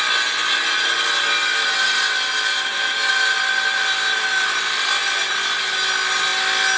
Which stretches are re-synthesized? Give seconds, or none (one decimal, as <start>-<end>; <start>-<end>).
none